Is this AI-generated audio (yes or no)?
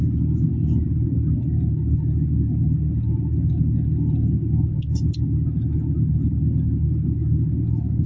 no